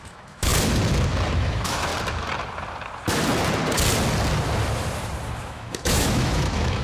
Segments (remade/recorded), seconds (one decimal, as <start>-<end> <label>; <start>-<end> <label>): 0.0-0.5 remade; 0.5-1.3 recorded; 1.3-1.9 remade; 1.9-5.4 recorded; 5.4-6.8 remade